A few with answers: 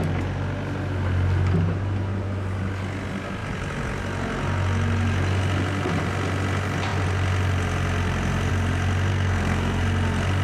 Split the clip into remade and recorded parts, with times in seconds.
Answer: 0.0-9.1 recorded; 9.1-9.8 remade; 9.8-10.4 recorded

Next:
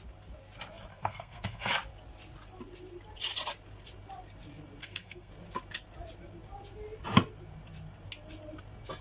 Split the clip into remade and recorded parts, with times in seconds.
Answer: 0.0-0.9 recorded; 0.9-1.7 remade; 1.7-4.8 recorded; 4.8-5.3 remade; 5.3-9.0 recorded

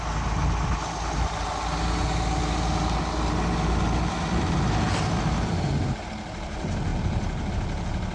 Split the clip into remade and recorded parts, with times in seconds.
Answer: 0.0-8.1 recorded

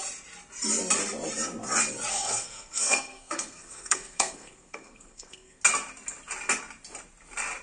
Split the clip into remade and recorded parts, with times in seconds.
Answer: 0.0-2.1 recorded; 2.1-5.6 remade; 5.6-7.6 recorded

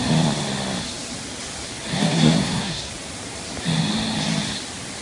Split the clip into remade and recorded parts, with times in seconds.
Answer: 0.0-1.9 recorded; 1.9-2.9 remade; 2.9-5.0 recorded